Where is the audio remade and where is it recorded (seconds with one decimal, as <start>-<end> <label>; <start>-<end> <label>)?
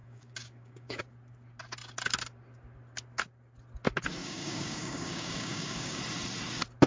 0.0-1.0 remade; 1.0-4.2 recorded; 4.2-6.0 remade; 6.0-6.9 recorded